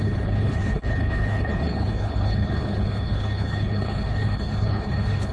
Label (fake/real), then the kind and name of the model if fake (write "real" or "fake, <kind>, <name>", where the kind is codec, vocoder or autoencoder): fake, codec, HILCodec